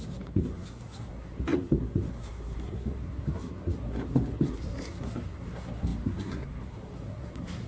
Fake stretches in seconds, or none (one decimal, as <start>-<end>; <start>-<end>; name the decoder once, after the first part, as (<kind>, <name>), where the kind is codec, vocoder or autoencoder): 0.0-7.7 (codec, SNAC)